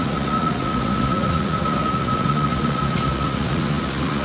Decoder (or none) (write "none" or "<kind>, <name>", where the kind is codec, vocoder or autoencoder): vocoder, Vocos